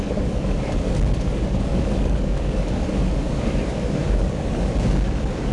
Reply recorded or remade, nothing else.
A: remade